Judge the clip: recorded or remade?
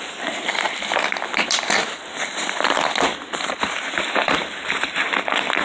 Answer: recorded